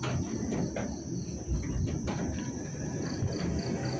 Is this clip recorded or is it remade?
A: recorded